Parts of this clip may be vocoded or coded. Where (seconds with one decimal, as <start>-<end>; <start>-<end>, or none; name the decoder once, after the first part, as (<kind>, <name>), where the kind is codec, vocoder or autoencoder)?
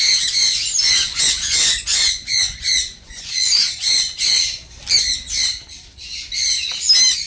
1.0-4.8 (vocoder, Vocos)